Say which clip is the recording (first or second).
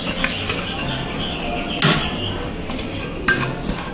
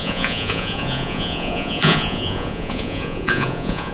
first